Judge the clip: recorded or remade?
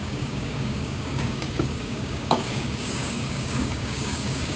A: remade